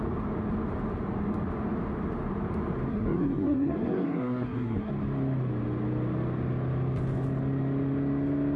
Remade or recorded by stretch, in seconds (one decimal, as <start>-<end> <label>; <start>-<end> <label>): 0.0-2.9 recorded; 2.9-4.9 remade; 4.9-8.6 recorded